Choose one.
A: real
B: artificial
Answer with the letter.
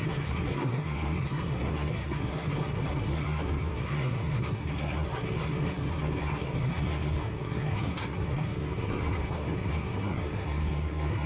B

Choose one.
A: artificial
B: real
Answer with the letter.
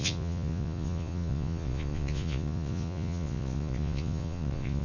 A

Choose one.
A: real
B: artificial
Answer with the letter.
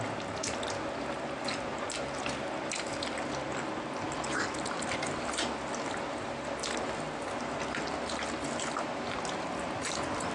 A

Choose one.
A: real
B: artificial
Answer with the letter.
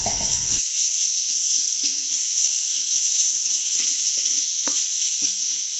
B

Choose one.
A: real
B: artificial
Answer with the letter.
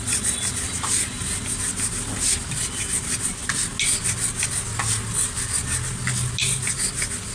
A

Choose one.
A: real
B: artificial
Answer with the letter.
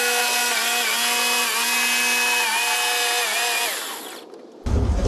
A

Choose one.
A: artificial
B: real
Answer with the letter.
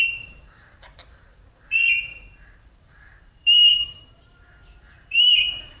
A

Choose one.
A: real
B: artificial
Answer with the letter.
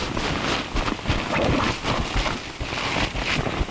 A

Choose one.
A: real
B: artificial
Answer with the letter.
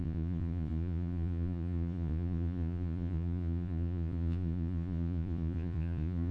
B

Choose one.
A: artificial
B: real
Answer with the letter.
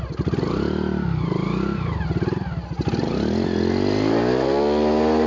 B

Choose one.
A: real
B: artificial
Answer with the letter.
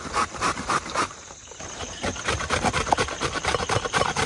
B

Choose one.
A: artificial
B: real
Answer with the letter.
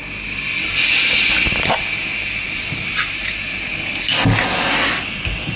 B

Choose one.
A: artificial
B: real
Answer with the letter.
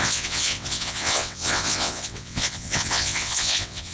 A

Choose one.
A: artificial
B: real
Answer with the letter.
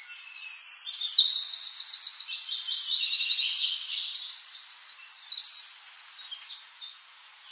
B